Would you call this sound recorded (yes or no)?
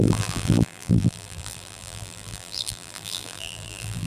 no